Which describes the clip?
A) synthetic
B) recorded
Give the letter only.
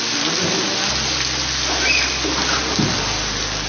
B